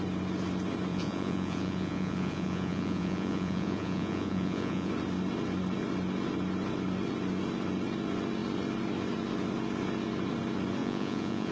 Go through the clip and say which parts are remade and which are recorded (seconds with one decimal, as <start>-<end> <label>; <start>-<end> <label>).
0.0-0.9 recorded; 0.9-4.9 remade; 4.9-10.8 recorded; 10.8-11.5 remade